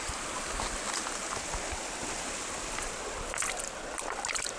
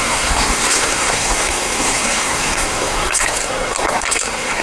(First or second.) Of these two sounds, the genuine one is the first